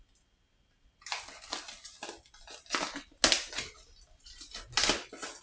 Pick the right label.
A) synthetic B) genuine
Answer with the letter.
B